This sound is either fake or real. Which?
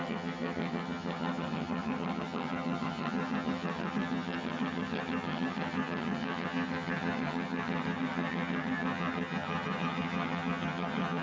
fake